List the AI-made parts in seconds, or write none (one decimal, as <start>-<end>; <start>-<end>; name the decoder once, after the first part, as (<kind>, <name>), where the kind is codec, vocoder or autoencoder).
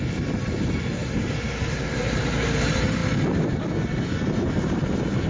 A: 0.0-3.0 (vocoder, BigVGAN v2); 4.3-5.3